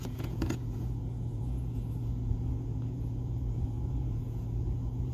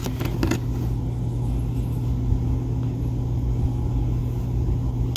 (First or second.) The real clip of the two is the second